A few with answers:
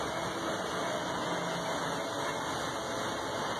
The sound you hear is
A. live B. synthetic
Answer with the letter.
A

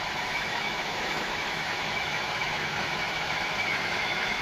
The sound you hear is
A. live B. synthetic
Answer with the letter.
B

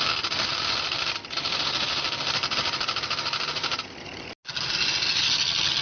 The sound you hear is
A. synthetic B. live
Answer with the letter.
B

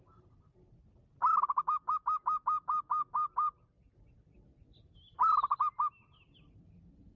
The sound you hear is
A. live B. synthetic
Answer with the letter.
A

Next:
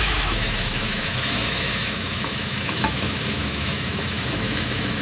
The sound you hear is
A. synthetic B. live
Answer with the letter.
A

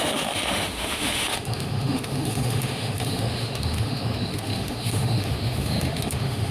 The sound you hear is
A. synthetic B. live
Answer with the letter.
A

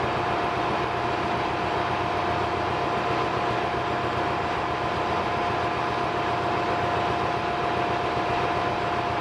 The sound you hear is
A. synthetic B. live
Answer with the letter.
B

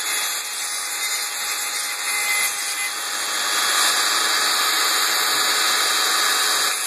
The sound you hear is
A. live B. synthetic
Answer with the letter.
A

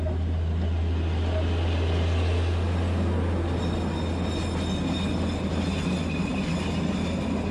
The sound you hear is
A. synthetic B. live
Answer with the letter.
B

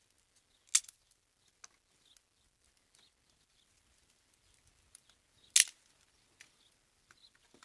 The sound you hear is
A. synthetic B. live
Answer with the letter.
B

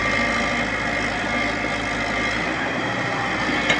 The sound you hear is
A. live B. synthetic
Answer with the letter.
A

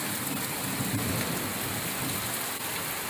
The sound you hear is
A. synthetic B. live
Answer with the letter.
B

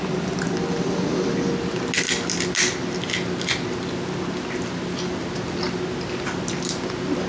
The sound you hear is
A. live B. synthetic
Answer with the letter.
A